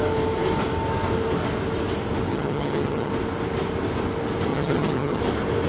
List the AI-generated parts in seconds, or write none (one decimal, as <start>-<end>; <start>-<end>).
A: 2.3-3.1; 4.5-5.2